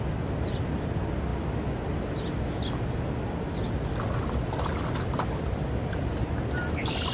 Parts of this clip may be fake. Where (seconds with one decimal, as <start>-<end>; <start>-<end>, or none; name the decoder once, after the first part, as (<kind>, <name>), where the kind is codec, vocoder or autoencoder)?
none